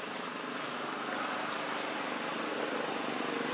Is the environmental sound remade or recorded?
recorded